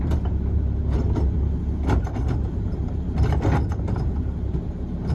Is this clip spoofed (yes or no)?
no